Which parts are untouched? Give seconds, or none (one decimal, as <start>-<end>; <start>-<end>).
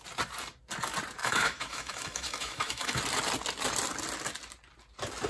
0.0-1.2; 3.0-5.3